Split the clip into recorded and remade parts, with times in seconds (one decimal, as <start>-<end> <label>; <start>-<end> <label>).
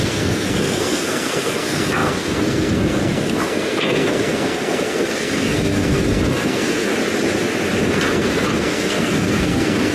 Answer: 0.0-6.9 remade; 6.9-7.9 recorded; 7.9-9.9 remade